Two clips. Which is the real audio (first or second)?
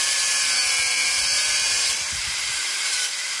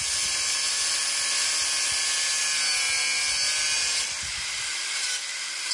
second